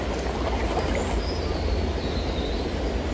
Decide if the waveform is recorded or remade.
recorded